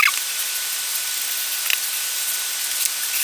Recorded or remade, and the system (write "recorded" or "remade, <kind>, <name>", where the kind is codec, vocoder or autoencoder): recorded